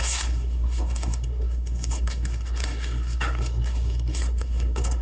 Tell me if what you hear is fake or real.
fake